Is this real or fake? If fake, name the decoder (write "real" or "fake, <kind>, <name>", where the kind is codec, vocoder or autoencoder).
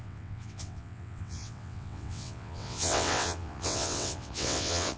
fake, vocoder, WaveNeXt